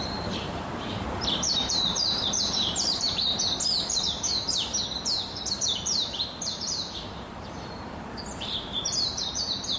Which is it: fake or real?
fake